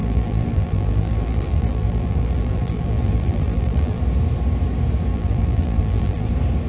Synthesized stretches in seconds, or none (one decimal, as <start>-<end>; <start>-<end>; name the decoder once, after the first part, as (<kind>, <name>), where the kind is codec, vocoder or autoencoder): 0.0-4.0 (vocoder, BigVGAN v2); 5.1-6.3